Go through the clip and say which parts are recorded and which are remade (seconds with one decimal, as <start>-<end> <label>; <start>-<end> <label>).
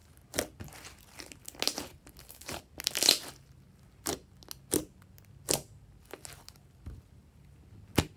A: 0.0-8.2 recorded